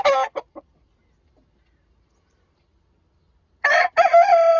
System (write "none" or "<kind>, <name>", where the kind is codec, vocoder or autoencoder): none